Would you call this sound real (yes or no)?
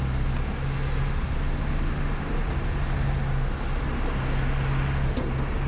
yes